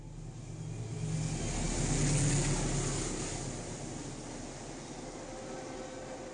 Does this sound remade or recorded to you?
recorded